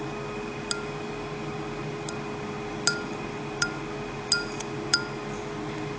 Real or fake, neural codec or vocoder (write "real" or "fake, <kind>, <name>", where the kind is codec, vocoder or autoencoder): real